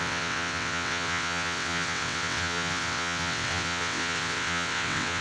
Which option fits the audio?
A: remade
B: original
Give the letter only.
A